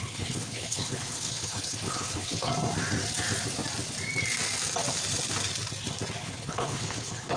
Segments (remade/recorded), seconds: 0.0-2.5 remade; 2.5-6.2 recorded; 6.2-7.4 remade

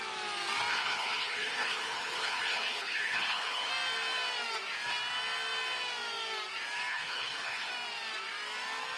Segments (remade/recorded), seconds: 0.0-0.7 recorded; 0.7-3.7 remade; 3.7-6.9 recorded; 6.9-7.7 remade; 7.7-9.0 recorded

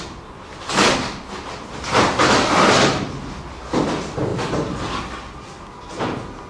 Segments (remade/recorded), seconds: 0.0-6.5 recorded

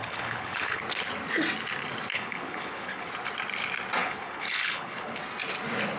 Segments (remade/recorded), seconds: 0.0-0.8 remade; 0.8-2.1 recorded; 2.1-3.1 remade; 3.1-4.0 recorded; 4.0-5.2 remade; 5.2-6.0 recorded

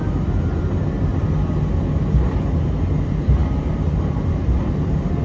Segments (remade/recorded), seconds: 0.0-5.2 recorded